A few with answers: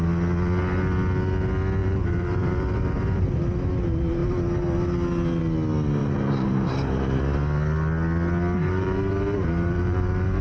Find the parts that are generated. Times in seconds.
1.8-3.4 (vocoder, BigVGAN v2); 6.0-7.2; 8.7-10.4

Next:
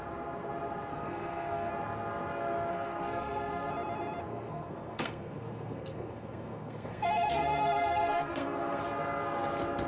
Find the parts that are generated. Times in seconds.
0.9-1.7 (codec, SNAC); 2.7-3.7; 4.3-8.8

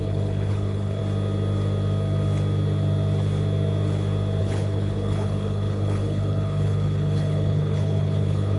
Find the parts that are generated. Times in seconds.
0.0-1.0 (codec, HILCodec); 4.4-8.6

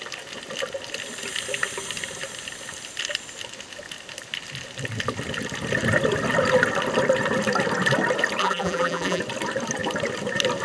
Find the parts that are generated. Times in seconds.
8.4-9.2 (vocoder, BigVGAN v2)

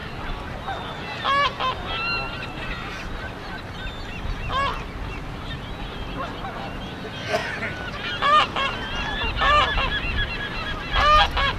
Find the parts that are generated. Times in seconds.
0.0-0.6 (vocoder, BigVGAN v2); 7.4-10.3

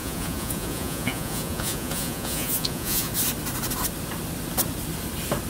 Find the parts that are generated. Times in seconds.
0.0-3.1 (vocoder, Vocos)

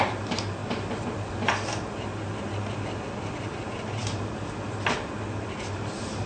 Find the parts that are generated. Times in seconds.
none